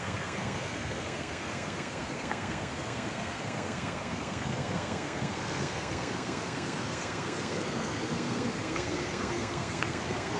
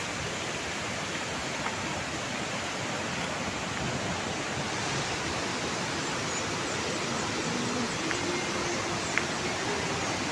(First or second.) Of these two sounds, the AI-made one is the first